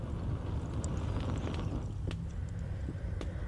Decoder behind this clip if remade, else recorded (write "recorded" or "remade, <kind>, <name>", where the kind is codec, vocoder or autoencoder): recorded